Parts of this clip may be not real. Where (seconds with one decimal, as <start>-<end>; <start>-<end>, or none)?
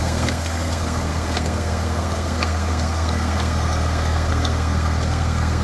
0.0-5.6